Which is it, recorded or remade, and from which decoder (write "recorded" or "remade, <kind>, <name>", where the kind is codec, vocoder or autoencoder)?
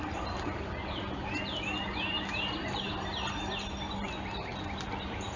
recorded